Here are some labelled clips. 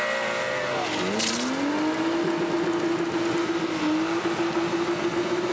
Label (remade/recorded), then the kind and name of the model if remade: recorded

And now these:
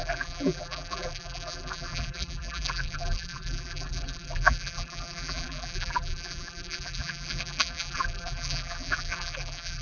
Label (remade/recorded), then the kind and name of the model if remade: remade, vocoder, BigVGAN v2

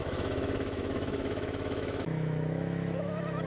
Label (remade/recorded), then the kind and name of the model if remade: remade, autoencoder, DAC-VAE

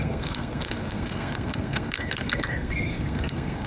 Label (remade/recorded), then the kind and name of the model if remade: remade, codec, SNAC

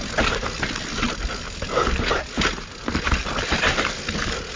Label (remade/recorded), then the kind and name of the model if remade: recorded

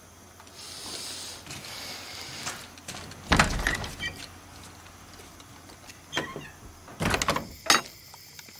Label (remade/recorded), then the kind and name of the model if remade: recorded